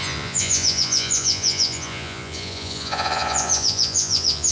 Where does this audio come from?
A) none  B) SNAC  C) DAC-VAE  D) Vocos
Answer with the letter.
D